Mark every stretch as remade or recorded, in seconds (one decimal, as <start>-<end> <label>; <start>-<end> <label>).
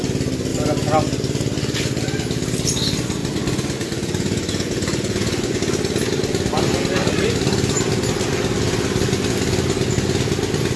0.0-3.2 recorded; 3.2-5.6 remade; 5.6-10.8 recorded